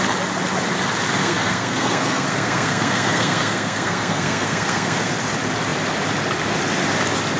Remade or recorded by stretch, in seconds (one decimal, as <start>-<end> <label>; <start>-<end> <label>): 0.0-1.2 recorded; 1.2-5.1 remade; 5.1-7.4 recorded